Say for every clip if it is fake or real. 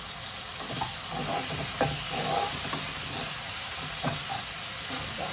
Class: real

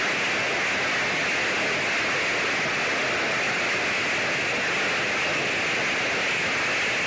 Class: real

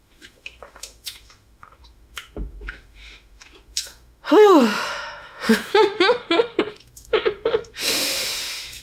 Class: fake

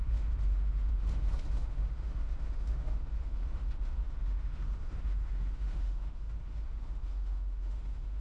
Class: fake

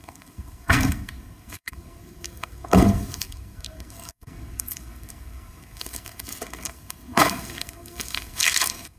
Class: fake